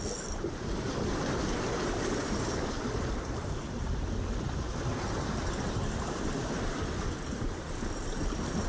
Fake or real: real